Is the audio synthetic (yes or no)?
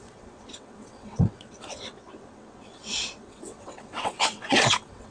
yes